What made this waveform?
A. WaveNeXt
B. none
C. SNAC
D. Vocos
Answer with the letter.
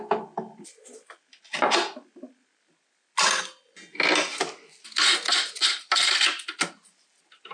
B